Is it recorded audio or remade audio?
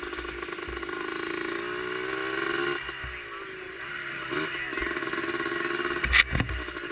recorded